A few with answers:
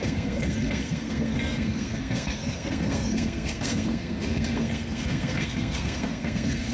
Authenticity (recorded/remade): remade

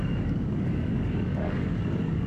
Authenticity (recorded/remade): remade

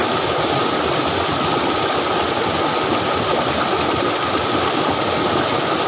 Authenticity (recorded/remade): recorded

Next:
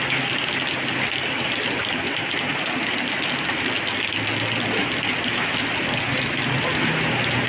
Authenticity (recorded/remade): recorded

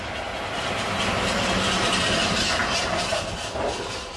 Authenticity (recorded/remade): recorded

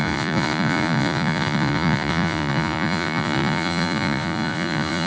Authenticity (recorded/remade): remade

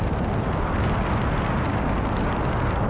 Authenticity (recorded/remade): recorded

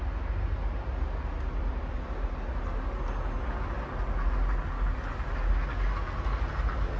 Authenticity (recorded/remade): recorded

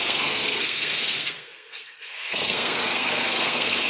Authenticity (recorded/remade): remade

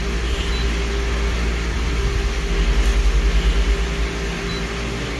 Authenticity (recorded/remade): recorded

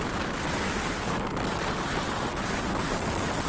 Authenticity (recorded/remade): recorded